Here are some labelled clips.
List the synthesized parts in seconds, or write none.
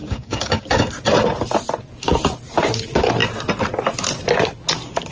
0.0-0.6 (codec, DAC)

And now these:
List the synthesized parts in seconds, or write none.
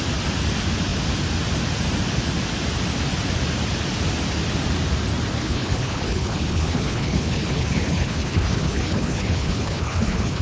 5.4-10.4 (codec, HILCodec)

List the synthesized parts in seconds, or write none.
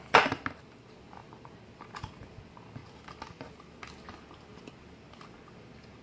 none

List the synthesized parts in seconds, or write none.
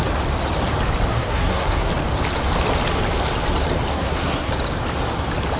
1.1-1.9 (codec, SNAC); 3.9-4.5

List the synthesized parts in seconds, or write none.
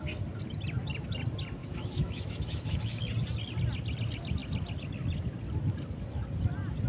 1.6-3.0 (autoencoder, DAC-VAE)